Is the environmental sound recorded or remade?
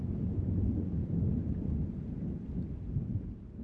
recorded